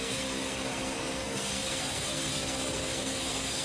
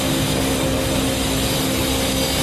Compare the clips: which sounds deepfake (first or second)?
first